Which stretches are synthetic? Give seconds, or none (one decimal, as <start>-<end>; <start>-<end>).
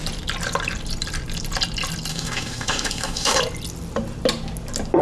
2.1-3.4